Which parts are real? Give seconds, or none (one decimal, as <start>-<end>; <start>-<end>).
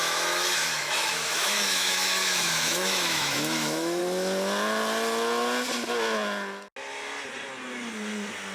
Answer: 4.0-8.5